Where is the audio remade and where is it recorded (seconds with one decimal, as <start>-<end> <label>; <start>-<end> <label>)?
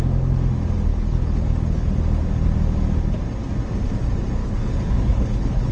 0.0-0.9 recorded; 0.9-2.0 remade; 2.0-4.4 recorded; 4.4-5.7 remade